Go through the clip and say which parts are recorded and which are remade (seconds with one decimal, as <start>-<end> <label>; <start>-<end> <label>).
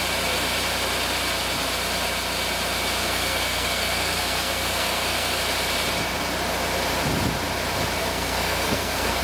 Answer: 0.0-3.0 recorded; 3.0-5.4 remade; 5.4-8.0 recorded; 8.0-9.2 remade